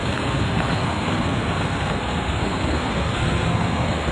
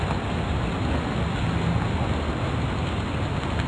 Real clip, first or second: second